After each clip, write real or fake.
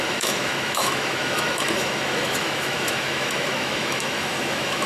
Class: fake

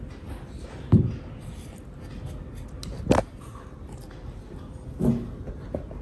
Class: real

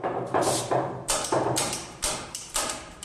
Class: fake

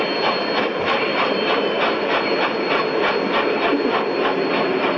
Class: real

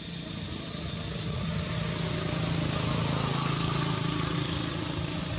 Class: real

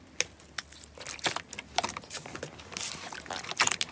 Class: real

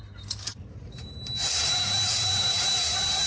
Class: fake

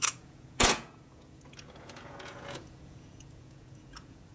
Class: fake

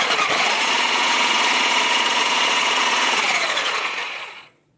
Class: fake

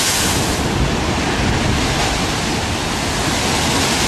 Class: real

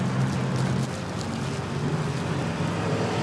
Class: real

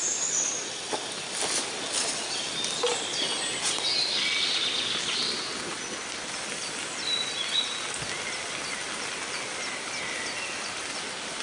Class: real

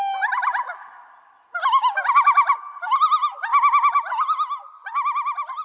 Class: real